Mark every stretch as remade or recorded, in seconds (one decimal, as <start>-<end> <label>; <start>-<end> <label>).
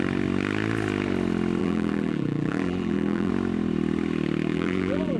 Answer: 0.0-1.6 recorded; 1.6-3.3 remade; 3.3-4.5 recorded; 4.5-5.2 remade